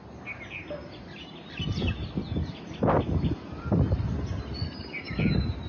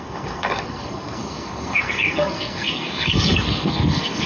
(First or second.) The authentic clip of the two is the first